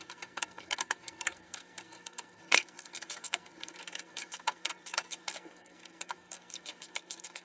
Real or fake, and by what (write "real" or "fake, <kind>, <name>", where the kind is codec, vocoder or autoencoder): fake, codec, SNAC